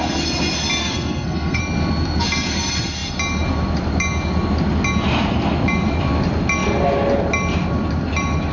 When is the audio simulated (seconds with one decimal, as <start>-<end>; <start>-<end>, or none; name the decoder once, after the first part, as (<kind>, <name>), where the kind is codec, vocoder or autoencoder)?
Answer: 0.8-1.6 (codec, SNAC)